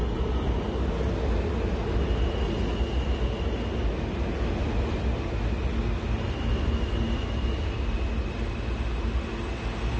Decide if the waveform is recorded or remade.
recorded